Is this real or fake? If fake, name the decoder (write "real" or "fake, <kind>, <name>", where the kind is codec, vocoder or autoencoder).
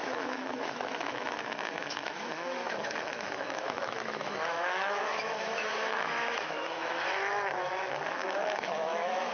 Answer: fake, autoencoder, DAC-VAE